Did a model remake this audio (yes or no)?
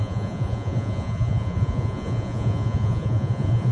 yes